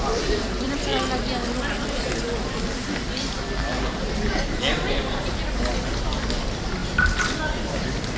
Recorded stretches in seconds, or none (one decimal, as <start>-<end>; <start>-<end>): 0.9-5.8

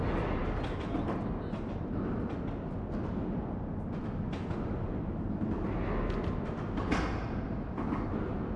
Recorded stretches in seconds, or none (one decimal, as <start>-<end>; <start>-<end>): 0.0-8.6

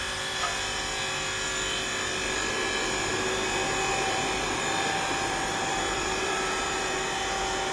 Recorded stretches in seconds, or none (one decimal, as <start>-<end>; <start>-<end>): 0.0-3.9; 6.8-7.7

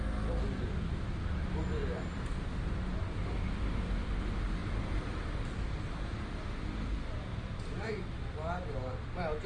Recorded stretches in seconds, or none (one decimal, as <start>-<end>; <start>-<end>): 0.0-1.8; 2.5-4.6; 5.8-7.3; 7.9-9.5

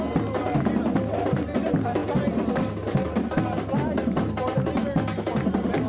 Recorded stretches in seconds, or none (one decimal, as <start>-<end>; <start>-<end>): 0.0-5.9